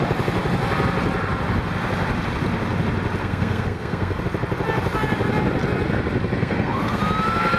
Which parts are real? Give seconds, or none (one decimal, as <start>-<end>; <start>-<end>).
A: 0.0-3.2; 4.2-6.4; 7.0-7.6